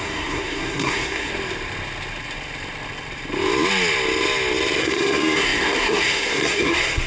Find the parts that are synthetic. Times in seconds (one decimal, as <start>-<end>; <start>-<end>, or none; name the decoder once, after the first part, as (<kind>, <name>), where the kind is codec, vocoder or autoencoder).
0.0-1.3 (codec, SNAC); 4.8-7.1

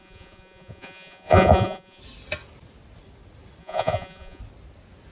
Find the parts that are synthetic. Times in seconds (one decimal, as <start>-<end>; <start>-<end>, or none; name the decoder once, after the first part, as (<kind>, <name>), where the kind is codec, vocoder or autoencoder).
0.0-2.0 (vocoder, Vocos); 3.6-4.4

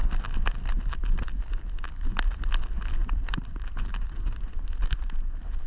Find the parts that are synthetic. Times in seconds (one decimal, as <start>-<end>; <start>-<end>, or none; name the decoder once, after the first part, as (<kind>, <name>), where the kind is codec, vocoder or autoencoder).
3.0-5.7 (vocoder, BigVGAN v2)

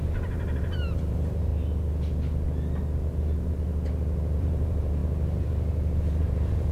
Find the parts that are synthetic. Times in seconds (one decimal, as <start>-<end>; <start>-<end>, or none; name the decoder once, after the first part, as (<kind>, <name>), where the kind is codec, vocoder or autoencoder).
0.0-1.5 (vocoder, BigVGAN v2); 4.4-5.0; 6.2-6.7

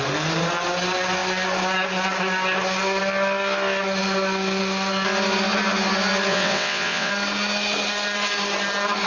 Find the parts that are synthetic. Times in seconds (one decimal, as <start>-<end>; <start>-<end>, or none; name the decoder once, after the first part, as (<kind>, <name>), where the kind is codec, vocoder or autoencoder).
6.3-7.1 (vocoder, WaveNeXt)

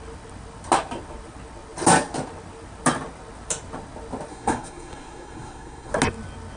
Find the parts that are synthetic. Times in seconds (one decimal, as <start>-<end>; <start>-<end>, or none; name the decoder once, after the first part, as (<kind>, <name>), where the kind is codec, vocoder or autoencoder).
4.3-5.9 (codec, SNAC)

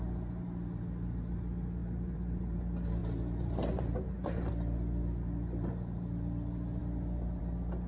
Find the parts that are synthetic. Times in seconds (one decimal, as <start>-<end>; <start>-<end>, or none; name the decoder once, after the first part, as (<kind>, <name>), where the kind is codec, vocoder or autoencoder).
1.8-2.6 (vocoder, BigVGAN v2); 3.0-4.5

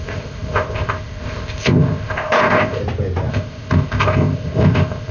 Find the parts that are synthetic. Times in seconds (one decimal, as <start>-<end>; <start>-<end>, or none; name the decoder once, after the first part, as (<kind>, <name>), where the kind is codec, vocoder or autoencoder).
0.0-2.8 (codec, ZipCodec); 3.3-5.1